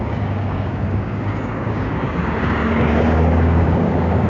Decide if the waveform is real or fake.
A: fake